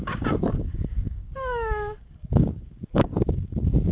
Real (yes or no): no